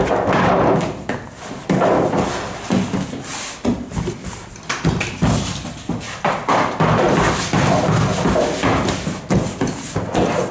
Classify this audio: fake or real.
real